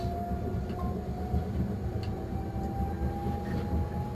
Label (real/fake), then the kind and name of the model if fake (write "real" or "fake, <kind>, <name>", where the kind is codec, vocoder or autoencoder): real